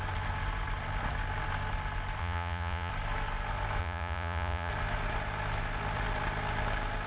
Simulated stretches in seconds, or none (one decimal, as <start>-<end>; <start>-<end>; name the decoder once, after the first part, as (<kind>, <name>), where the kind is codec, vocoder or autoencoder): 2.2-2.9 (vocoder, Vocos); 3.8-4.7